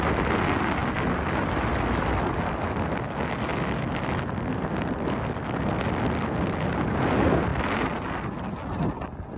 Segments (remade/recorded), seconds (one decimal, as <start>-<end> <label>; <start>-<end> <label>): 0.0-9.4 recorded